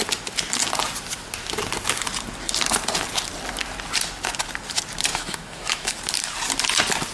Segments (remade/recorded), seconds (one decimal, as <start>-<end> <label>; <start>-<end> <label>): 0.0-5.1 recorded; 5.1-6.0 remade; 6.0-7.1 recorded